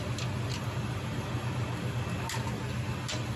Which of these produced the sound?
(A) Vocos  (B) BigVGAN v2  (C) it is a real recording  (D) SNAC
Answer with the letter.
C